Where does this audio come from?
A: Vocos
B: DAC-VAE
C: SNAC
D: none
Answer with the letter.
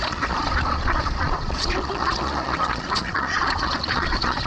A